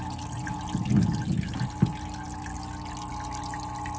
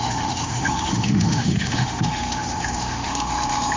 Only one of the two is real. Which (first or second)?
first